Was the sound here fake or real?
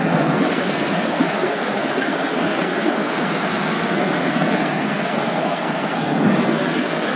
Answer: fake